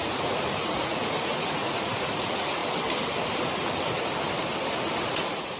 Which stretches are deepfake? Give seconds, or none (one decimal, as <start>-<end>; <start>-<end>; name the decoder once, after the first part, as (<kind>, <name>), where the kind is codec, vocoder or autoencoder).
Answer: 0.0-2.6 (vocoder, Vocos); 5.1-5.6